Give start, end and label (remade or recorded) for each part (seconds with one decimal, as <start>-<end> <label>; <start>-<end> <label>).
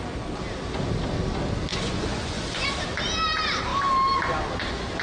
0.0-1.7 recorded; 1.7-2.7 remade; 2.7-5.0 recorded